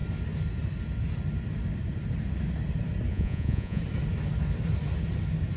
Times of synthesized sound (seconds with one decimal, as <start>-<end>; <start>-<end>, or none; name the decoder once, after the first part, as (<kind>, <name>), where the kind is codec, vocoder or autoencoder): 3.1-3.8 (vocoder, Vocos)